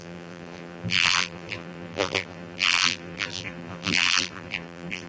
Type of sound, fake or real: fake